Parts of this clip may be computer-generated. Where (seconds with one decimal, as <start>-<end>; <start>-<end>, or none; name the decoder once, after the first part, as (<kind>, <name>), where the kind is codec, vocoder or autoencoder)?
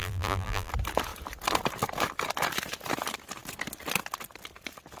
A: 0.0-0.7 (vocoder, BigVGAN v2)